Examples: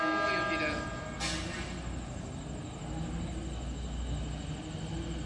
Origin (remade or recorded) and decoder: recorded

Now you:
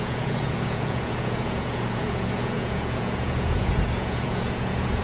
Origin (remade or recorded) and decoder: remade, vocoder, Vocos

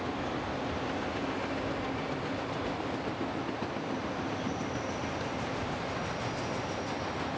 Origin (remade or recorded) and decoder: recorded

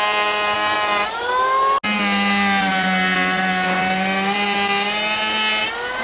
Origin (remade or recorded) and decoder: recorded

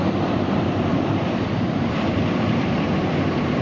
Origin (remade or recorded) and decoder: remade, vocoder, BigVGAN v2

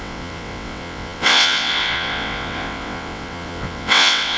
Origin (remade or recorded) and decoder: remade, vocoder, WaveNeXt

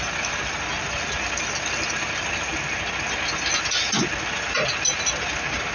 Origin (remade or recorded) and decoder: recorded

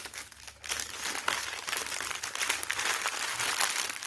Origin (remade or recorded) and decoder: recorded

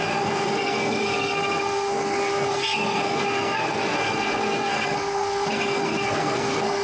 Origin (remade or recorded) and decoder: remade, codec, SNAC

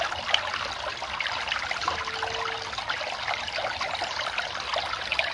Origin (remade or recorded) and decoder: recorded